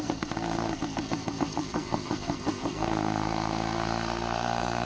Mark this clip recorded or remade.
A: remade